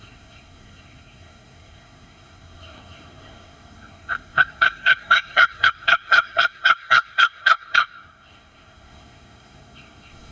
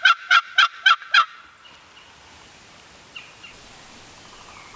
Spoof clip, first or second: first